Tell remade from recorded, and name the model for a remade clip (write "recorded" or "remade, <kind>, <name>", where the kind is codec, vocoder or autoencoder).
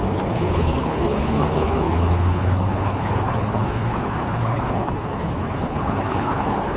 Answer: remade, codec, HILCodec